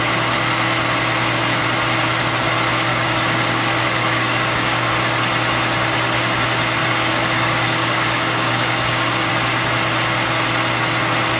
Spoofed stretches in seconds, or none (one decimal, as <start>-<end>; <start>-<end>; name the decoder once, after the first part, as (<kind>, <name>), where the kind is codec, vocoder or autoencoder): 2.9-4.9 (codec, DAC); 6.8-9.3